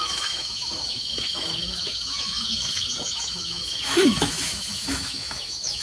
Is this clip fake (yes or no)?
yes